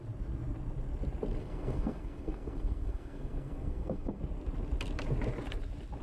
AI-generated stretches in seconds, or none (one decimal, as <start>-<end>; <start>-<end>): 1.4-4.2